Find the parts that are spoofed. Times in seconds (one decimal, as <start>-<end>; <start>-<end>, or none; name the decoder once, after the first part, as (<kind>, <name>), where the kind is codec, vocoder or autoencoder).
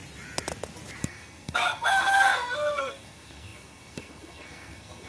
1.0-5.1 (codec, SNAC)